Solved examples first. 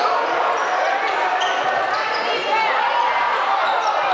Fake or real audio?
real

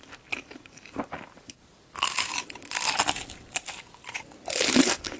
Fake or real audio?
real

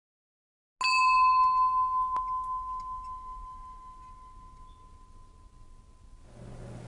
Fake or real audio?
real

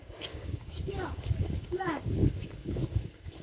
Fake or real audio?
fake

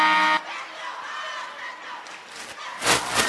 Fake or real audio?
real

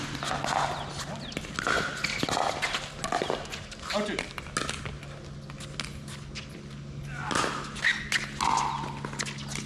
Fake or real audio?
real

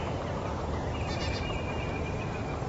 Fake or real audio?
real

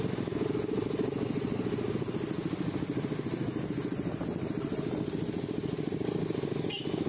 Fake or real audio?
real